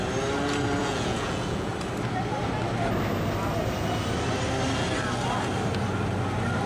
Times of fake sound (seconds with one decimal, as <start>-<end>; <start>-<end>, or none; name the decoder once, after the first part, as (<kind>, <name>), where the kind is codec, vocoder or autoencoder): 0.8-1.7 (vocoder, Vocos)

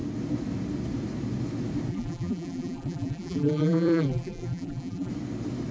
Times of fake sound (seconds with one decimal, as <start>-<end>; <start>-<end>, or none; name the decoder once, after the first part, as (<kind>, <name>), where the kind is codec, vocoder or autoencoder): 1.9-5.1 (vocoder, BigVGAN v2)

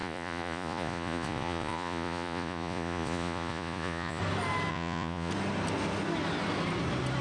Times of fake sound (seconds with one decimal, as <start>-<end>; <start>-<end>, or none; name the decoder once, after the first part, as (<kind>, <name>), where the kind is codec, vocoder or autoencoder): 0.0-4.2 (vocoder, Vocos); 4.7-5.3

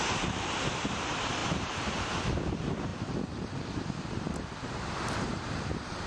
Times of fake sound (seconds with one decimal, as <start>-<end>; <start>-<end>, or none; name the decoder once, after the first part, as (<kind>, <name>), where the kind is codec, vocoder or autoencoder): 0.0-2.9 (vocoder, BigVGAN v2); 4.7-6.1

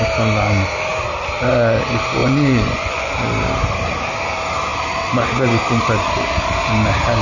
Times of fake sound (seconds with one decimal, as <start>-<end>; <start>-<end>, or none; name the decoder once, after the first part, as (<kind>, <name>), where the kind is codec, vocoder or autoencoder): 2.2-3.1 (vocoder, Vocos)

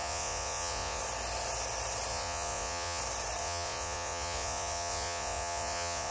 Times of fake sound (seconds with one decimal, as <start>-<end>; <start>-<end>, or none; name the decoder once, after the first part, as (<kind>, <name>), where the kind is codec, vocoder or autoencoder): 0.0-1.0 (vocoder, Vocos); 2.1-3.0; 3.4-6.1

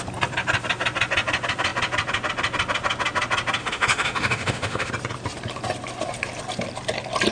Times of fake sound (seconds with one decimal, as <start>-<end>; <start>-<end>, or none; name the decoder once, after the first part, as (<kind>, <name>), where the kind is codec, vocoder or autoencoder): 3.6-4.9 (autoencoder, DAC-VAE)